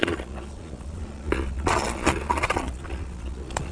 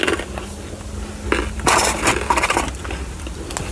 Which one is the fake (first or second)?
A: first